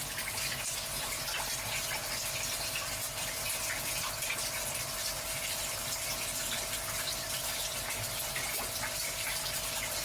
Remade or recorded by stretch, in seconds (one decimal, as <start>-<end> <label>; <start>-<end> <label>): 0.0-5.1 recorded; 5.1-6.1 remade; 6.1-10.0 recorded